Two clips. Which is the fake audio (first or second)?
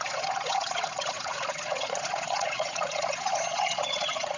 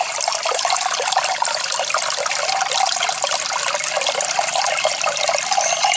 first